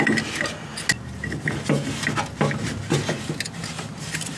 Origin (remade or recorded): recorded